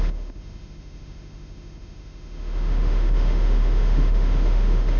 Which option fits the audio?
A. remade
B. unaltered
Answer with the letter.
A